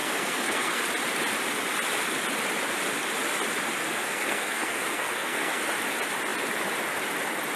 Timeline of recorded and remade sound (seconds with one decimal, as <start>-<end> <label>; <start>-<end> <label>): 0.0-0.8 remade; 0.8-3.9 recorded; 3.9-5.6 remade; 5.6-7.6 recorded